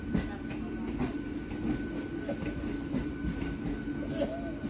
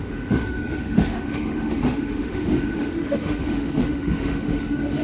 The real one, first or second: first